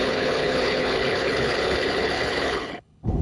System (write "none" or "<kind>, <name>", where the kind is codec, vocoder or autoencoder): codec, HILCodec